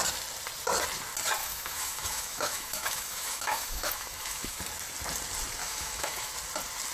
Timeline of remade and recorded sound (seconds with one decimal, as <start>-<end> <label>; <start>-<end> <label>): 0.0-1.4 recorded; 1.4-4.6 remade; 4.6-5.6 recorded; 5.6-6.3 remade; 6.3-6.9 recorded